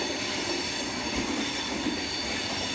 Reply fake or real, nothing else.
real